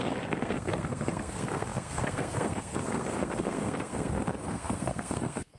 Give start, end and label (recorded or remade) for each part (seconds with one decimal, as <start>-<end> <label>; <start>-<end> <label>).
0.0-5.6 remade